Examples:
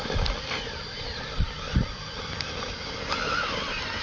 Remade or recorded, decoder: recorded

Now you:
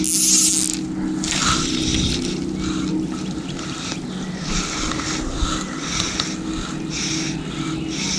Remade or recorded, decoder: recorded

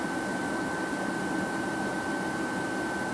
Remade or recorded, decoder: recorded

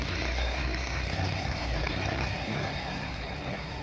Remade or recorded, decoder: remade, codec, SNAC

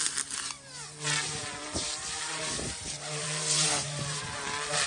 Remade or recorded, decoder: remade, vocoder, BigVGAN v2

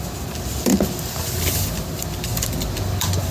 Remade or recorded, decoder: remade, vocoder, BigVGAN v2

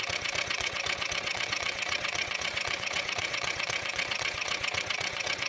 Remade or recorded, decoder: remade, vocoder, WaveNeXt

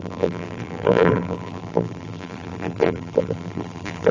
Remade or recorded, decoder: remade, vocoder, BigVGAN v2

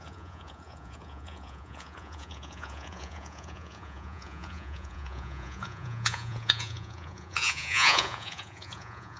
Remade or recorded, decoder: remade, vocoder, Vocos